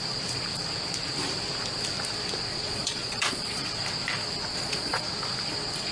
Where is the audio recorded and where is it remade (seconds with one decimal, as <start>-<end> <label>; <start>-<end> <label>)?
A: 0.0-2.5 recorded; 2.5-3.6 remade; 3.6-4.5 recorded; 4.5-5.0 remade; 5.0-5.9 recorded